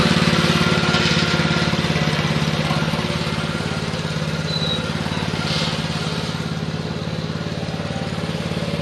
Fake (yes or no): no